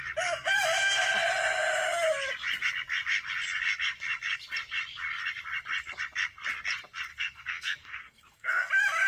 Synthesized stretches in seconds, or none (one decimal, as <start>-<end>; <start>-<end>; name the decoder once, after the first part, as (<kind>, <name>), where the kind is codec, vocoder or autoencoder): 7.1-8.7 (codec, SNAC)

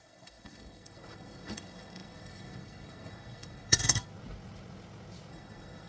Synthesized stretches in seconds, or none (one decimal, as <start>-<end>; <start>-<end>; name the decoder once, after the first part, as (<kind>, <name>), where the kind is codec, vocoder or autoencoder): 0.0-4.1 (codec, SNAC); 5.3-5.9